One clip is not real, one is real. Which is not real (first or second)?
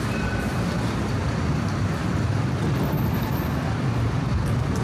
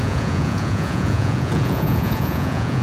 second